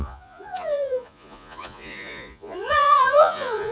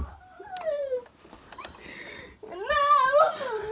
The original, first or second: second